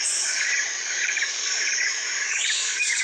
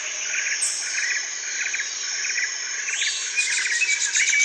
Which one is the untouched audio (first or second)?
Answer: second